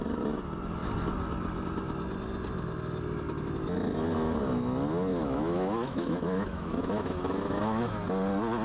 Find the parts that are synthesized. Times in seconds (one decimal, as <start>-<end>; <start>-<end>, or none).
5.1-7.8